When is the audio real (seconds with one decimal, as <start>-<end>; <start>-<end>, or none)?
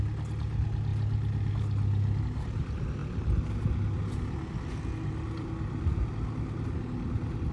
0.0-7.5